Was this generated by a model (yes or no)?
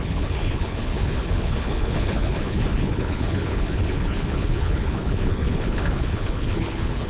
yes